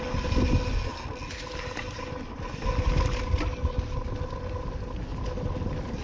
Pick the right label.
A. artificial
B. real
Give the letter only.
B